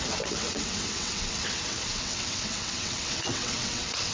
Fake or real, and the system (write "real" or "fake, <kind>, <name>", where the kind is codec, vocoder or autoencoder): fake, vocoder, WaveNeXt